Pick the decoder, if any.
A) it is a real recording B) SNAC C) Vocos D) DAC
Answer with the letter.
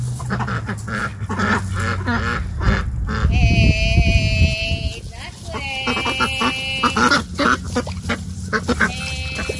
A